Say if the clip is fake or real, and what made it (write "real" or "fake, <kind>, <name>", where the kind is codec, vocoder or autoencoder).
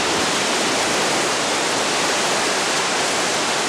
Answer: real